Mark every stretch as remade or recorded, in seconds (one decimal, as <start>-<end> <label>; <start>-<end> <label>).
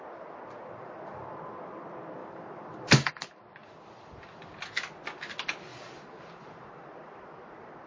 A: 0.0-0.6 recorded; 0.6-1.4 remade; 1.4-2.2 recorded; 2.2-3.1 remade; 3.1-3.6 recorded; 3.6-4.5 remade; 4.5-5.7 recorded; 5.7-7.9 remade